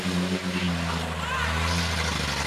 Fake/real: real